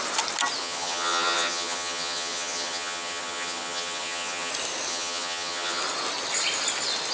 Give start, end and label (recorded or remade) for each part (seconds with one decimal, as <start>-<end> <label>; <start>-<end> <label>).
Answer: 0.0-0.6 recorded; 0.6-4.5 remade; 4.5-4.9 recorded; 4.9-5.8 remade; 5.8-7.1 recorded